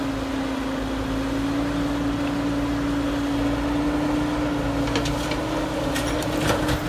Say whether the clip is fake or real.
real